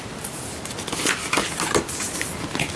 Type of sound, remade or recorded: recorded